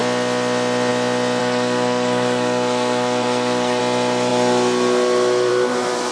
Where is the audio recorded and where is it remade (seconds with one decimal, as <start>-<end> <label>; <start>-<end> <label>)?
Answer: 0.0-1.4 recorded; 1.4-3.8 remade; 3.8-6.1 recorded